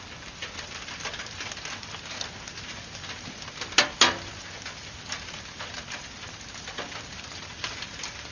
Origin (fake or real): real